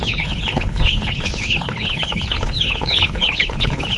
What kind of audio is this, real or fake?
fake